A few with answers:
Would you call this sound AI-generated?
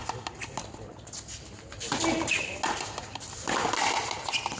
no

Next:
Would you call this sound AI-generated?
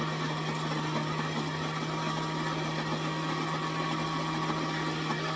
no